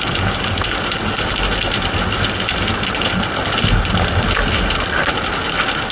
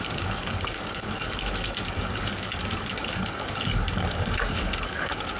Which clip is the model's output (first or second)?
second